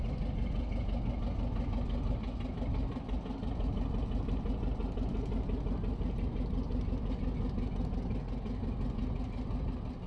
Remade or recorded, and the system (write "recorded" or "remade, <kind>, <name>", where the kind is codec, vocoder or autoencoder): recorded